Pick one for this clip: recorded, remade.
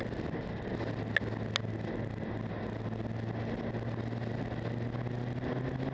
recorded